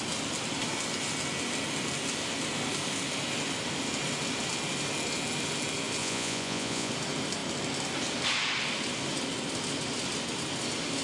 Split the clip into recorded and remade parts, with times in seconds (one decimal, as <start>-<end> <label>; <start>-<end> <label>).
0.0-6.0 recorded; 6.0-6.9 remade; 6.9-11.0 recorded